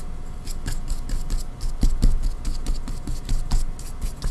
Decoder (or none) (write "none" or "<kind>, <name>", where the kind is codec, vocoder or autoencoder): none